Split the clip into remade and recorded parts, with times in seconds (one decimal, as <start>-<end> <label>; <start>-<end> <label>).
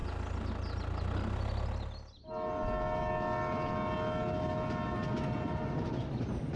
0.0-6.6 recorded